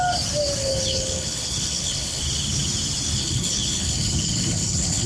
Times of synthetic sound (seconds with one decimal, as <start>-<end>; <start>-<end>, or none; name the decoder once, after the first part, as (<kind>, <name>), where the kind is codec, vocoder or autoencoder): 0.6-2.2 (codec, HILCodec); 3.2-5.1